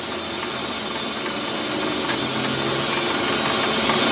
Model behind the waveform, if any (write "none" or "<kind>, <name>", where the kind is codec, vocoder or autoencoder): none